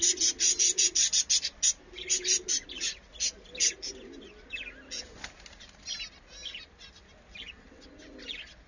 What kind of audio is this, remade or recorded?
recorded